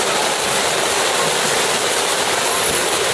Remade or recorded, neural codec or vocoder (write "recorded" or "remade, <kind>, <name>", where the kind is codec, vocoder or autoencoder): recorded